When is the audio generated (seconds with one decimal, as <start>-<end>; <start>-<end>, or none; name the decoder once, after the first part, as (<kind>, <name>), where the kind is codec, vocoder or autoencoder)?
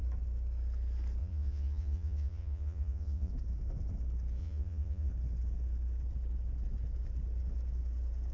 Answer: 1.2-3.3 (vocoder, Vocos); 4.4-5.1